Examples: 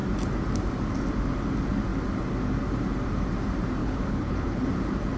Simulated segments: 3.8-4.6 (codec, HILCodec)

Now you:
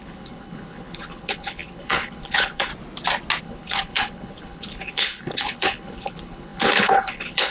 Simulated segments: 0.0-2.7 (codec, HILCodec); 3.4-7.5

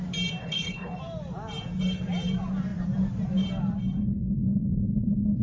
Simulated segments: 0.4-1.0 (codec, HILCodec)